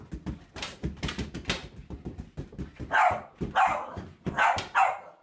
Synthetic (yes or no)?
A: no